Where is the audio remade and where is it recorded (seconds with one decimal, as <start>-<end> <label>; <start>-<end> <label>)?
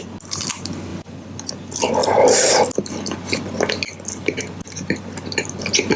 0.0-2.0 recorded; 2.0-2.6 remade; 2.6-6.0 recorded